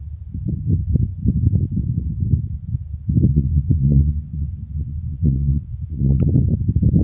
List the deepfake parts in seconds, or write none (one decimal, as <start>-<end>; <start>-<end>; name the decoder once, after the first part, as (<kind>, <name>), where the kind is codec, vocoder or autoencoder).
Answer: 3.3-6.3 (vocoder, Vocos)